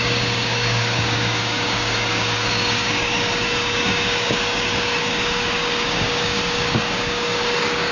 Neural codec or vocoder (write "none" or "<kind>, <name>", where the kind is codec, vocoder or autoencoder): codec, DAC